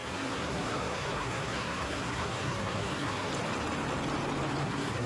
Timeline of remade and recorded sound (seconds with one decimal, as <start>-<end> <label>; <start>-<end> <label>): 0.0-3.3 remade; 3.3-4.6 recorded; 4.6-5.1 remade